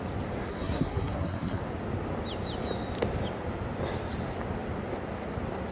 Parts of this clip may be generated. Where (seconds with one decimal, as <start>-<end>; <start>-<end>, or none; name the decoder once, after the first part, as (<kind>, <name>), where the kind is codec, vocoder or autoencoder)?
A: 0.5-1.6 (codec, SNAC)